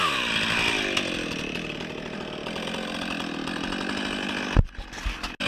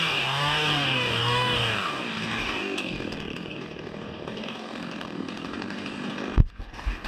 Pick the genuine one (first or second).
first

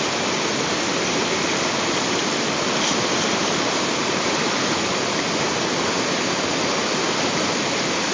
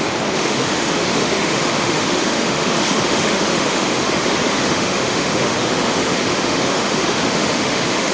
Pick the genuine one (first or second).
first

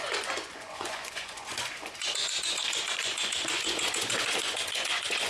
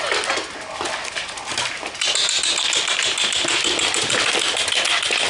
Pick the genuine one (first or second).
second